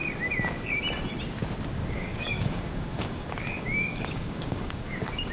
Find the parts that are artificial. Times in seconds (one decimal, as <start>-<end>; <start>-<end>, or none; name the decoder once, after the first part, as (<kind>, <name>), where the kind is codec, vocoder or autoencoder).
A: 1.8-5.3 (codec, DAC)

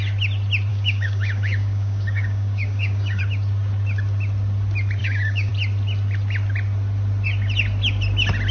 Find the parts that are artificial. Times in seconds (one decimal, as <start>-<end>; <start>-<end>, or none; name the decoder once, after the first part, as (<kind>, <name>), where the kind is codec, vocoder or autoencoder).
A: 0.7-3.2 (codec, DAC); 5.0-5.5

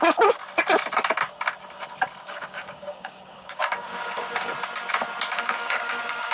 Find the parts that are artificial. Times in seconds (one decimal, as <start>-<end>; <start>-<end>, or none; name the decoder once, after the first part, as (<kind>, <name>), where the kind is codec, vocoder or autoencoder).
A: 0.0-0.4 (codec, DAC); 2.2-4.5; 5.3-6.3